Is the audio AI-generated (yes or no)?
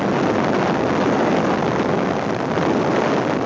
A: no